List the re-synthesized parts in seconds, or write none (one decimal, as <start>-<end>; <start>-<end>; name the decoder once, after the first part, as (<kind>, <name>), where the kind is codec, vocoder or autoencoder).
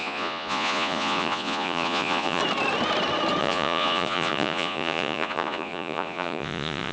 0.0-2.4 (vocoder, Vocos); 3.4-6.9